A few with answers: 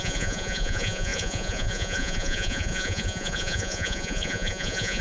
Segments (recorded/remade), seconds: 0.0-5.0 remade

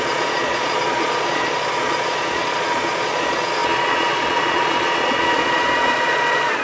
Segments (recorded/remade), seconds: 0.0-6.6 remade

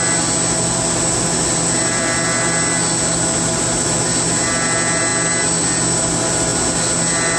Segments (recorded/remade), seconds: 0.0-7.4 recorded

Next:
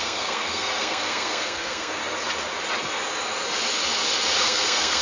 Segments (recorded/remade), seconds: 0.0-2.0 remade; 2.0-4.4 recorded; 4.4-5.0 remade